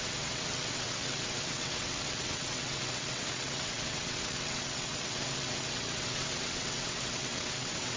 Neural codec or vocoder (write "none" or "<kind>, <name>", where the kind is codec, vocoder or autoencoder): vocoder, WaveNeXt